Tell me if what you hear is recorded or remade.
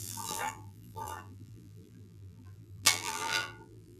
remade